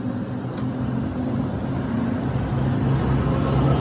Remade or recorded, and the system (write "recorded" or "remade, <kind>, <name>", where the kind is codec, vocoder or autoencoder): recorded